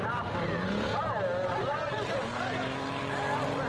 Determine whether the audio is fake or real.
real